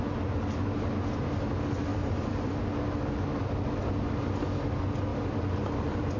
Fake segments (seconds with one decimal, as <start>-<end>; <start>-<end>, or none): 1.9-2.5; 5.1-6.2